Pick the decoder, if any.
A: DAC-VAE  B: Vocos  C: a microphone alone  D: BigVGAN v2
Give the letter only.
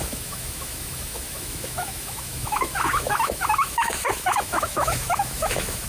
A